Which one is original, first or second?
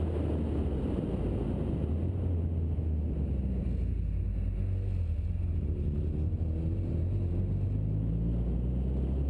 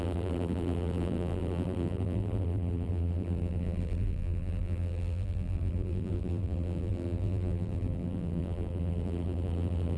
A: first